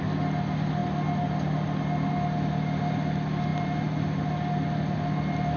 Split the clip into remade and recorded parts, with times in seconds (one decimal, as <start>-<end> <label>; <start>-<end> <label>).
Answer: 0.0-5.6 recorded